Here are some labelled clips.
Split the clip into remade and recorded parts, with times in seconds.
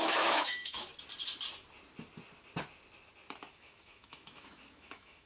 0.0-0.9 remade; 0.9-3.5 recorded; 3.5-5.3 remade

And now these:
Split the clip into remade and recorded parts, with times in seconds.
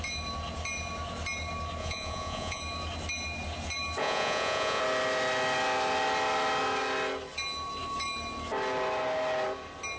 0.0-1.8 recorded; 1.8-2.6 remade; 2.6-4.0 recorded; 4.0-4.8 remade; 4.8-10.0 recorded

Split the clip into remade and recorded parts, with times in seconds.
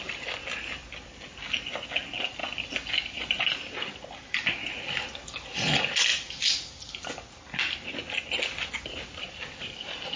0.0-10.2 recorded